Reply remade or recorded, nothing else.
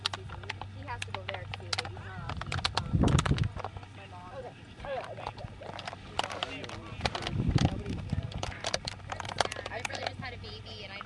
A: recorded